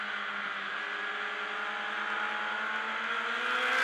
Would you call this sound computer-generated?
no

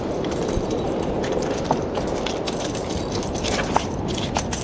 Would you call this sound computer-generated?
yes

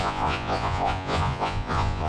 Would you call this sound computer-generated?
yes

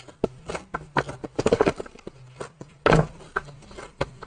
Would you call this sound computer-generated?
no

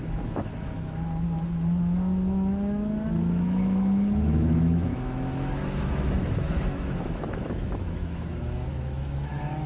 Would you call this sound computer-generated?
yes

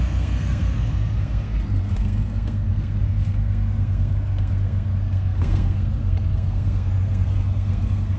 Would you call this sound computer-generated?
yes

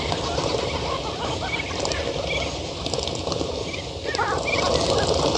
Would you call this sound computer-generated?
no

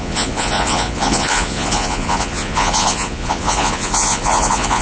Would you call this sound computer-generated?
yes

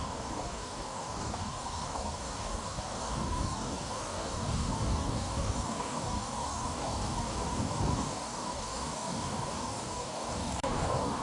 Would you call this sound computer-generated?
yes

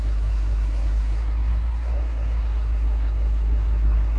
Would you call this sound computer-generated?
yes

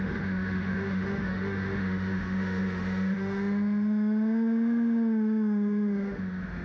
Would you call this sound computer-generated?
yes